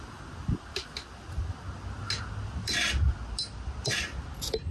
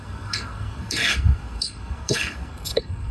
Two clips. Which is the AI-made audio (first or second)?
second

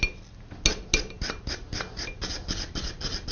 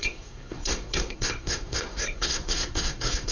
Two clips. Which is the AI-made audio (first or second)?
second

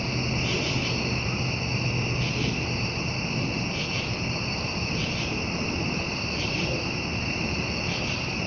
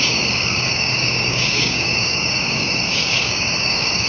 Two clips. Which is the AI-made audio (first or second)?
second